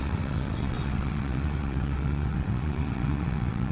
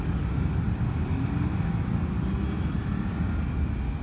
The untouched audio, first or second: second